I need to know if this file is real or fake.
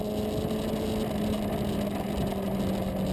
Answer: real